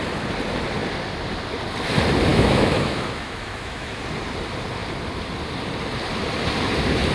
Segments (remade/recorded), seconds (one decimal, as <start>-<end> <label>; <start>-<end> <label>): 0.0-2.3 recorded; 2.3-4.0 remade; 4.0-7.1 recorded

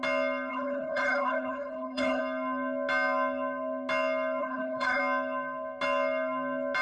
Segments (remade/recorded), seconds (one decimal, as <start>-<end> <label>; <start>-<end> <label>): 0.0-0.5 recorded; 0.5-2.2 remade; 2.2-4.4 recorded; 4.4-5.0 remade; 5.0-6.8 recorded

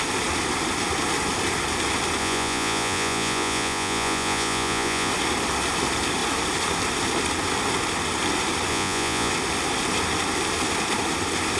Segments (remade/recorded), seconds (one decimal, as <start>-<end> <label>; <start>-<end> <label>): 0.0-2.2 recorded; 2.2-5.1 remade; 5.1-8.7 recorded; 8.7-9.3 remade; 9.3-11.6 recorded

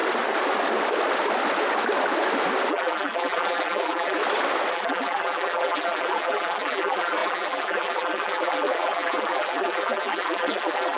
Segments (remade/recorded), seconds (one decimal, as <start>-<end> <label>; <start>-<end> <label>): 0.0-2.7 recorded; 2.7-4.2 remade; 4.2-4.7 recorded; 4.7-11.0 remade

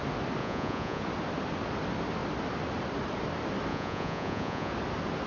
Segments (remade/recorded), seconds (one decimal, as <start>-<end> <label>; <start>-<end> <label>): 0.0-0.4 recorded; 0.4-1.0 remade; 1.0-3.7 recorded; 3.7-4.7 remade; 4.7-5.3 recorded

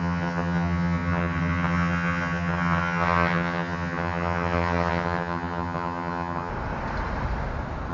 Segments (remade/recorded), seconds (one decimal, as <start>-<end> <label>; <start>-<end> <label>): 0.0-6.5 remade; 6.5-7.9 recorded

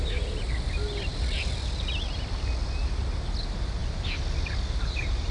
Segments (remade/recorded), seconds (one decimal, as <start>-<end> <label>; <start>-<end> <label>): 0.0-5.3 recorded

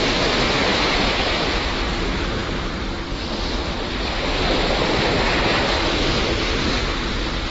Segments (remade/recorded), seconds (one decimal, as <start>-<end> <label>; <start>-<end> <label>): 0.0-0.7 recorded; 0.7-1.4 remade; 1.4-7.5 recorded